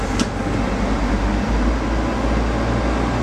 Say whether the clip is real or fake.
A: real